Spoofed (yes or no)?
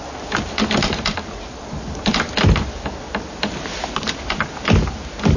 no